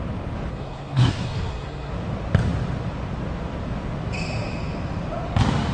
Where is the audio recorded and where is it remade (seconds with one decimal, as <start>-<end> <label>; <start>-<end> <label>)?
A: 0.0-0.5 recorded; 0.5-1.9 remade; 1.9-5.7 recorded

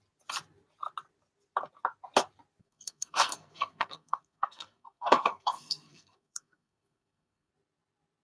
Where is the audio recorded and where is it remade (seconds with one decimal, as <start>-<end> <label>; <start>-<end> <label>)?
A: 0.0-2.6 recorded; 2.6-7.5 remade; 7.5-8.2 recorded

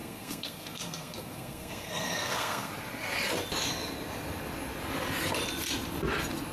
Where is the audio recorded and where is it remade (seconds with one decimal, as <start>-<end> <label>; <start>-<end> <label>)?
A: 0.0-2.7 remade; 2.7-6.5 recorded

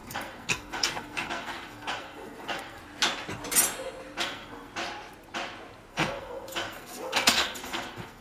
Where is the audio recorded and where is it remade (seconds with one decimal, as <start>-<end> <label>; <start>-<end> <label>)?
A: 0.0-2.8 remade; 2.8-4.2 recorded; 4.2-4.7 remade; 4.7-5.9 recorded; 5.9-8.2 remade

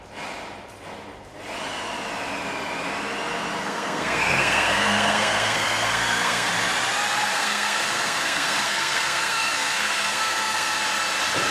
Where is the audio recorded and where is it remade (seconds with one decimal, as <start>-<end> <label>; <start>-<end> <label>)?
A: 0.0-3.6 recorded; 3.6-6.5 remade; 6.5-7.3 recorded; 7.3-10.8 remade; 10.8-11.5 recorded